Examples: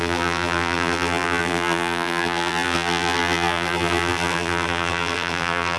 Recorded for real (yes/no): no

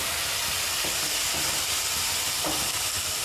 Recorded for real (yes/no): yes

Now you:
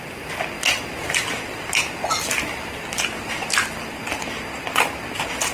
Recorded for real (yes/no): yes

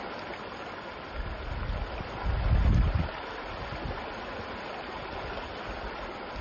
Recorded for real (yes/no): yes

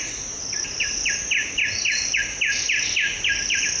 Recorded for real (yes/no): yes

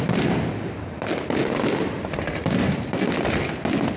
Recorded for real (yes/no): yes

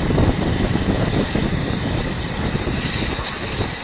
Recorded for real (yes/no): yes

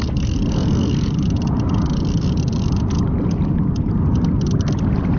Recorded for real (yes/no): yes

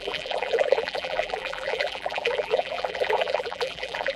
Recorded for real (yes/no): no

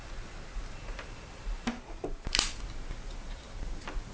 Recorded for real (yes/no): yes